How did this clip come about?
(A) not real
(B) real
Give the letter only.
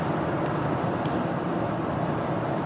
B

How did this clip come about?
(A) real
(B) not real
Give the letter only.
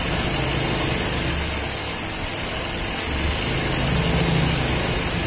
A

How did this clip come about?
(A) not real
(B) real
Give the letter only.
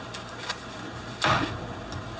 B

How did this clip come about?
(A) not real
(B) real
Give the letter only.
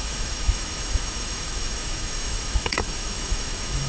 A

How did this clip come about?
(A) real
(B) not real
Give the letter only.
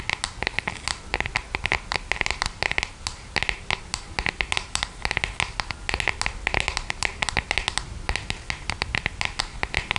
A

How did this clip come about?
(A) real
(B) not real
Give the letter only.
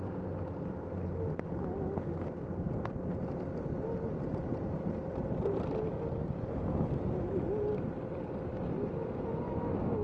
A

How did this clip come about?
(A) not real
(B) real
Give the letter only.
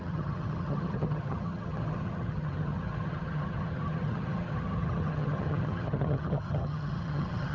A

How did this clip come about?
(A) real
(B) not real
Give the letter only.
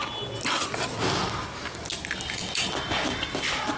A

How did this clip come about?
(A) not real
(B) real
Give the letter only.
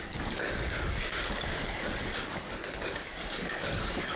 A